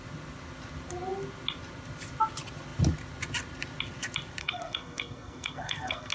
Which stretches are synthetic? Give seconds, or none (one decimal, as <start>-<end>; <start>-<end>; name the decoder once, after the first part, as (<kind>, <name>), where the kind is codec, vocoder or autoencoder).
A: 4.4-6.1 (codec, SNAC)